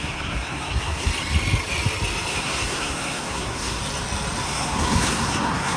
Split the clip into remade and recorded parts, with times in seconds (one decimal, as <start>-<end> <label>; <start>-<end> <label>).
0.0-1.1 remade; 1.1-2.3 recorded; 2.3-3.8 remade; 3.8-4.4 recorded; 4.4-5.8 remade